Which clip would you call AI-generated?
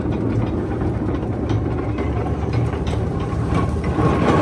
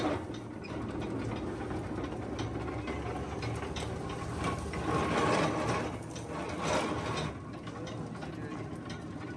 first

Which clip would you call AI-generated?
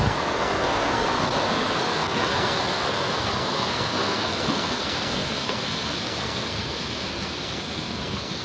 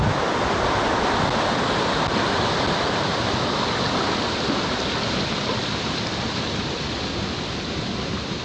first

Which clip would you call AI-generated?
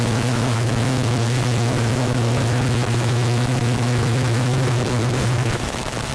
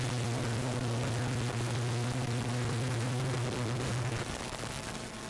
first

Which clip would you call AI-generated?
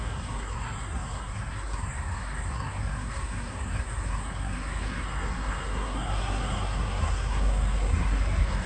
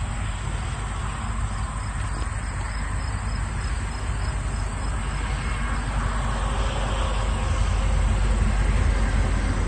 first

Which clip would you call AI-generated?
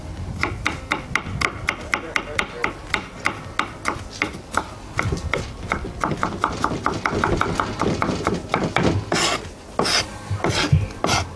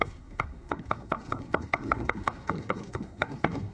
second